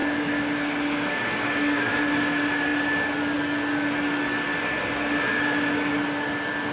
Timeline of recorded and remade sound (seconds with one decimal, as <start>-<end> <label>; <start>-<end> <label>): 0.0-1.9 remade; 1.9-6.7 recorded